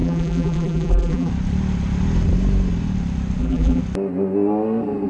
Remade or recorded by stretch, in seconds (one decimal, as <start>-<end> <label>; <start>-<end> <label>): 0.0-1.3 remade; 1.3-3.4 recorded; 3.4-3.8 remade; 3.8-5.1 recorded